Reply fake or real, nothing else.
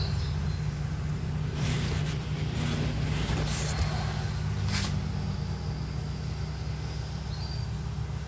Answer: real